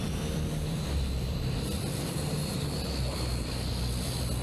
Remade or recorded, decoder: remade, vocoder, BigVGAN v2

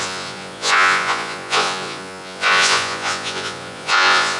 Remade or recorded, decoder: remade, vocoder, Vocos